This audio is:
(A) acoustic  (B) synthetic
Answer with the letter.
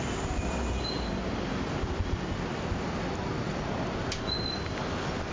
A